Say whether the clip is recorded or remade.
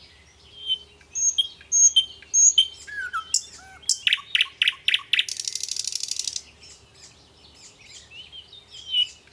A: recorded